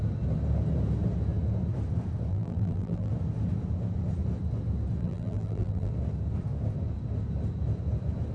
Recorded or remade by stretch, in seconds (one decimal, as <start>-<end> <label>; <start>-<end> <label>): 0.0-2.3 recorded; 2.3-3.1 remade; 3.1-5.0 recorded; 5.0-5.9 remade; 5.9-8.3 recorded